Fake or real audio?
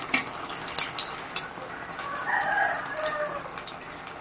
real